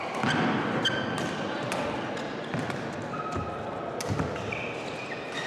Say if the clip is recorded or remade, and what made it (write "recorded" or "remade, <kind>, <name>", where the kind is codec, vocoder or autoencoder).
recorded